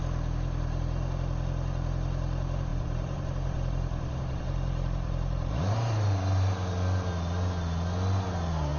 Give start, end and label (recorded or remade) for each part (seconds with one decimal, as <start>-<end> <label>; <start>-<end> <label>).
0.0-2.7 recorded; 2.7-6.7 remade; 6.7-8.8 recorded